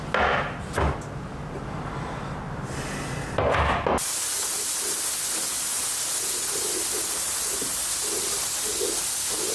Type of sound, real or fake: real